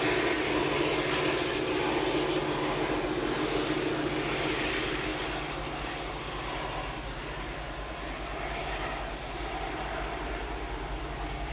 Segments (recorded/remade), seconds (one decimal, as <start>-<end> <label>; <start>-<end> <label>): 0.0-11.5 recorded